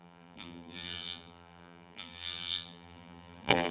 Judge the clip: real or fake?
fake